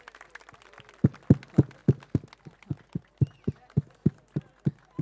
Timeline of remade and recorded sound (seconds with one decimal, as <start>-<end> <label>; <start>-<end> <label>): 0.0-5.0 recorded